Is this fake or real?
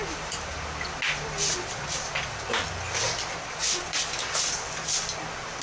real